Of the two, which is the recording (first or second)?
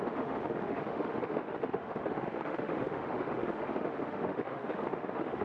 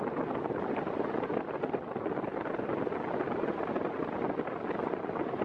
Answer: second